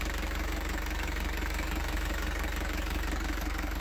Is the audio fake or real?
fake